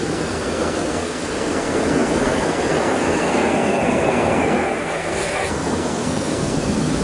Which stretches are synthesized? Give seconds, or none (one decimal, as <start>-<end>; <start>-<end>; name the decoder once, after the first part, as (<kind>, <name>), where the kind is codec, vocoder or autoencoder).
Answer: 0.0-7.0 (codec, SNAC)